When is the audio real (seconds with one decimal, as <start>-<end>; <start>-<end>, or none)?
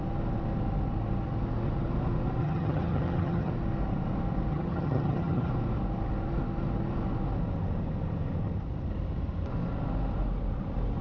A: 0.0-2.4; 3.5-4.5; 5.5-11.0